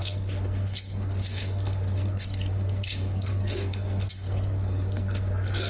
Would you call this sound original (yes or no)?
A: no